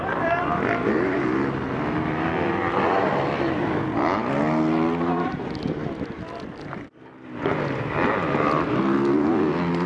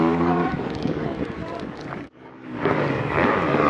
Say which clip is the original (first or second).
first